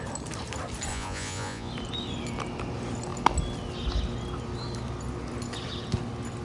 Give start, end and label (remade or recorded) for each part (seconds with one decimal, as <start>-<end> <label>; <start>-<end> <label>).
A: 0.0-0.9 recorded; 0.9-1.7 remade; 1.7-6.4 recorded